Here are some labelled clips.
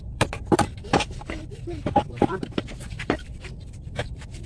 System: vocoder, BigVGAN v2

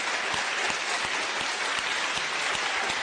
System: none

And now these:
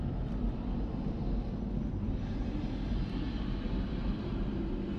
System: none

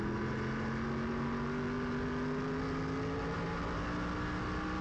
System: none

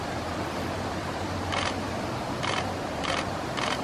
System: vocoder, BigVGAN v2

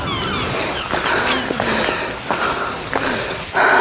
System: none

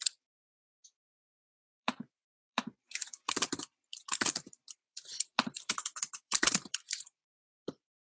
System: vocoder, BigVGAN v2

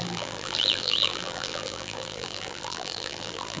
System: vocoder, BigVGAN v2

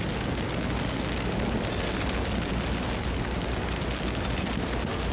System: none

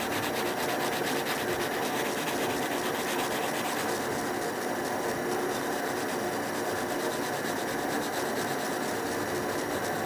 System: none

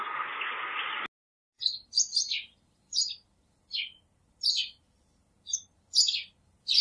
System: none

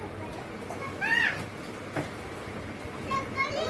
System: none